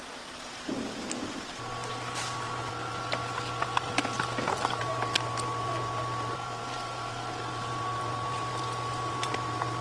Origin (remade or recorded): recorded